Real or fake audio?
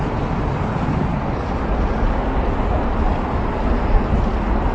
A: real